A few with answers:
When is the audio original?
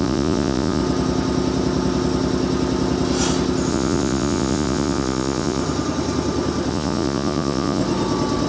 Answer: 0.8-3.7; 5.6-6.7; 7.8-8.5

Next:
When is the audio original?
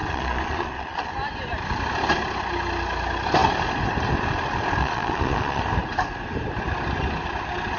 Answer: 1.1-4.8; 5.6-7.8